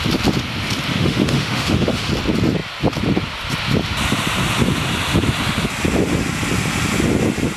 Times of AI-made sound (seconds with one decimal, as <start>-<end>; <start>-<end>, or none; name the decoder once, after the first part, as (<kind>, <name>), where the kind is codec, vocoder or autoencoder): 0.9-2.1 (autoencoder, DAC-VAE)

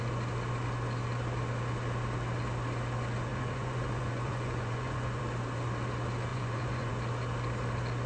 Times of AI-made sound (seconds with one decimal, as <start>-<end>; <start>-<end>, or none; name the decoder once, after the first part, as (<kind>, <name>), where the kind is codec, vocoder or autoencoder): 3.3-5.2 (vocoder, Vocos); 6.3-6.9